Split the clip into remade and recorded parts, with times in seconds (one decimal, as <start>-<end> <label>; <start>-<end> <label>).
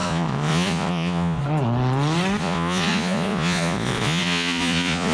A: 0.0-1.4 remade; 1.4-2.4 recorded; 2.4-5.1 remade